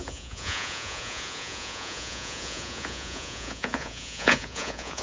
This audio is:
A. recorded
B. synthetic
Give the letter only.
B